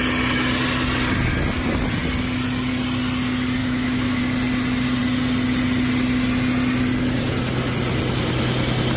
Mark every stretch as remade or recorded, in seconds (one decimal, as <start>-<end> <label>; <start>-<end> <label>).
0.0-3.6 recorded; 3.6-4.2 remade; 4.2-9.0 recorded